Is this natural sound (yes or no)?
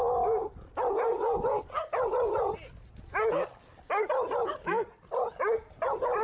yes